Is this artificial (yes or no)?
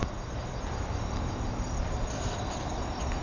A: no